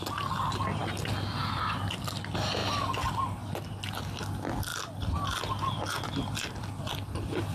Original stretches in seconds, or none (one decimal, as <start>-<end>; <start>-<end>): 0.0-7.5